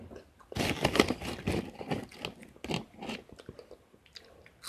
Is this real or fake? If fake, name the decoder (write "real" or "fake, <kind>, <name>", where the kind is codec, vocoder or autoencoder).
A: real